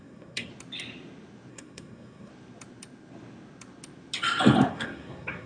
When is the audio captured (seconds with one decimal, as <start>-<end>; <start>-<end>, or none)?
0.5-1.5; 2.3-4.7